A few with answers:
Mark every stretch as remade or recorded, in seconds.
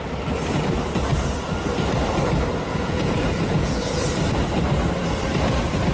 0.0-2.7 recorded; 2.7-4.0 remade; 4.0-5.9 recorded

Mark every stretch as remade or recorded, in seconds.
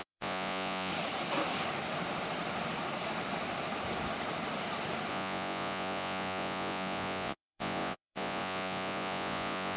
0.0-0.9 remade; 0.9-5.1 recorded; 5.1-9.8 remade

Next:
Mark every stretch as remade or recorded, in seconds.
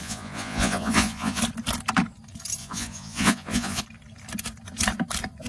0.0-1.4 remade; 1.4-2.6 recorded; 2.6-3.8 remade; 3.8-5.5 recorded